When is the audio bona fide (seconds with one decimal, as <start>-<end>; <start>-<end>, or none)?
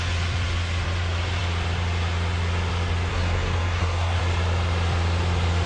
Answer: 0.0-3.1; 4.2-5.7